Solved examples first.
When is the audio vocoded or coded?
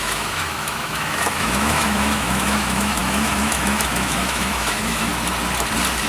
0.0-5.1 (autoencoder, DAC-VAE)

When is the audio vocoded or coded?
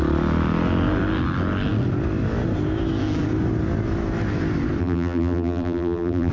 4.8-6.3 (vocoder, BigVGAN v2)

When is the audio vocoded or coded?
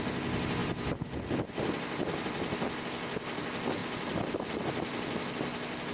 none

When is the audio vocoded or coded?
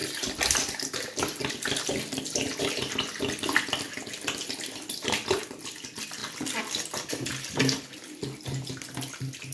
none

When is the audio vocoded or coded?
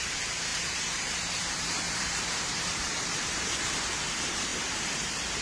0.5-3.7 (vocoder, BigVGAN v2); 4.5-5.4